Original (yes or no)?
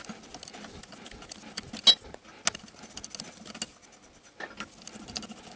yes